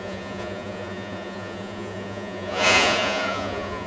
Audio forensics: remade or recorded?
remade